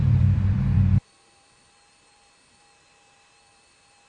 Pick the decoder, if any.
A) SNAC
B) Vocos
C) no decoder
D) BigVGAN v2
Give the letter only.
D